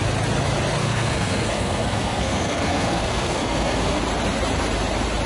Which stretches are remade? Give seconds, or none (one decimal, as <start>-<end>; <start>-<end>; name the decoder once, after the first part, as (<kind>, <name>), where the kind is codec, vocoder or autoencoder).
0.8-4.0 (codec, SNAC)